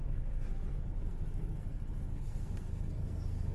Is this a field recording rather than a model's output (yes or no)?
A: no